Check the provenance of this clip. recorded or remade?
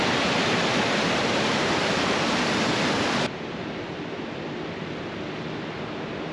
recorded